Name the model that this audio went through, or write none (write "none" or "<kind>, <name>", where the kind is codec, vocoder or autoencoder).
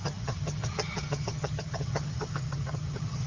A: vocoder, HiFi-GAN